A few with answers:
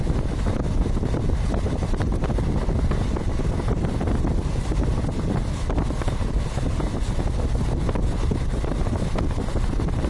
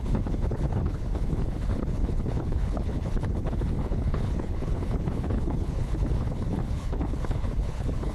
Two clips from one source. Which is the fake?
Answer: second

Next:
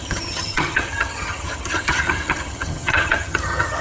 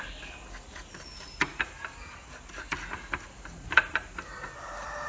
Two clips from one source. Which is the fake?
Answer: first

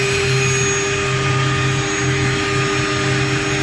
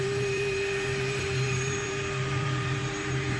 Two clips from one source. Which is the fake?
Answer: second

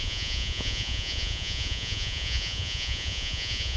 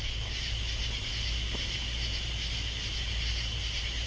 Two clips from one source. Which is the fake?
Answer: first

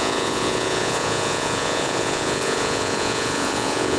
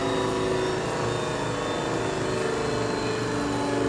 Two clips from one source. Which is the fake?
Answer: first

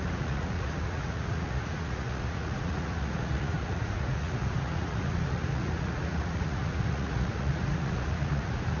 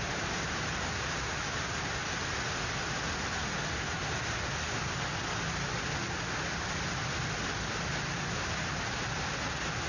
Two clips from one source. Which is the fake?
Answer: first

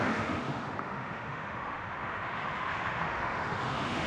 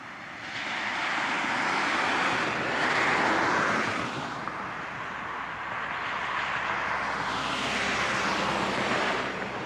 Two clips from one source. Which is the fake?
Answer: first